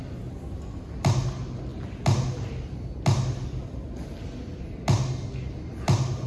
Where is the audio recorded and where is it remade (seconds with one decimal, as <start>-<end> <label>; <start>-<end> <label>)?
0.0-6.3 recorded